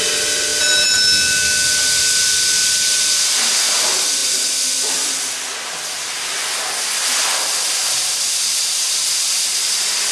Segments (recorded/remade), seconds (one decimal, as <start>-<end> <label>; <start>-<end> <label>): 0.0-10.1 recorded